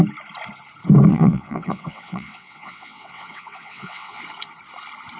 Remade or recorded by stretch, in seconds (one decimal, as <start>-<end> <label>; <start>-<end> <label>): 0.0-1.1 recorded; 1.1-4.2 remade; 4.2-5.2 recorded